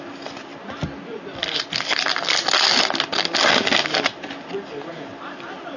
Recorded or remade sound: recorded